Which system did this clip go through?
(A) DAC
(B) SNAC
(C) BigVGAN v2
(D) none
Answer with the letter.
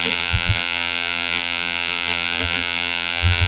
C